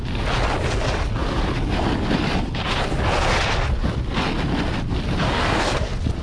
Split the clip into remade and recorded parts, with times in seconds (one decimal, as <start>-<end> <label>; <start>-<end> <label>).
0.0-5.2 recorded; 5.2-5.7 remade; 5.7-6.2 recorded